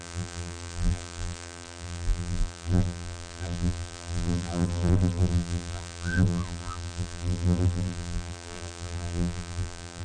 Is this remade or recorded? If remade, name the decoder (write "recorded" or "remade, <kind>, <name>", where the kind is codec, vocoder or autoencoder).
remade, vocoder, BigVGAN v2